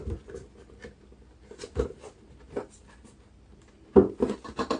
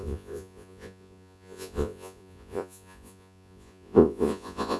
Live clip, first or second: first